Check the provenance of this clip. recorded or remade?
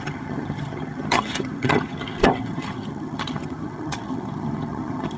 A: remade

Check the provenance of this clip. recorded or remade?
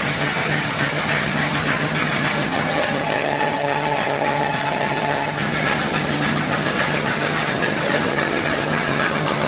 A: remade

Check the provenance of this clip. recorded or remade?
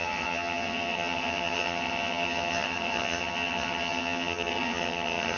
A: remade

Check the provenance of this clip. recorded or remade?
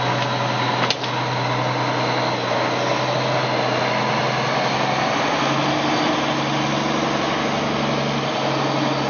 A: recorded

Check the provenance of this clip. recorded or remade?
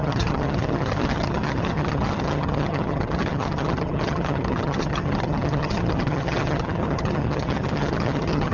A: remade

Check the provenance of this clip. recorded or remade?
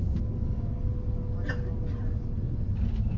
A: recorded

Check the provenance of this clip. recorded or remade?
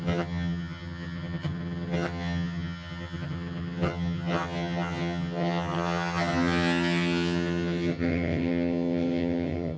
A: remade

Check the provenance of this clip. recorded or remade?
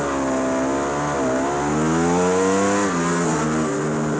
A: recorded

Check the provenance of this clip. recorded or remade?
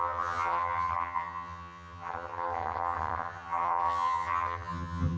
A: remade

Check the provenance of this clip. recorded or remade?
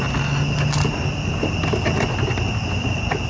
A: recorded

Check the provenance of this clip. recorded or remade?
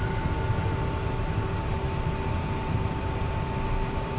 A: recorded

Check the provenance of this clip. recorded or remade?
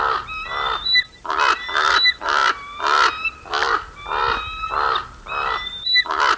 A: recorded